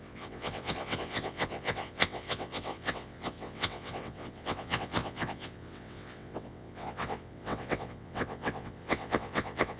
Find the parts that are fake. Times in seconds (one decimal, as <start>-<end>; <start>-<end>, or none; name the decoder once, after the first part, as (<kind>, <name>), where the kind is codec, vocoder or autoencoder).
0.0-9.8 (vocoder, WaveNeXt)